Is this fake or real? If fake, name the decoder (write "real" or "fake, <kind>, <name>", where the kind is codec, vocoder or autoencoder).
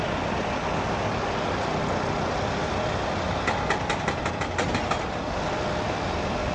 real